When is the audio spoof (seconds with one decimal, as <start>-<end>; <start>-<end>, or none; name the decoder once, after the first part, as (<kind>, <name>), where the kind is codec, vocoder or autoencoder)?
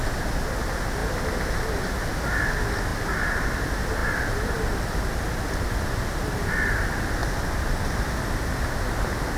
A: none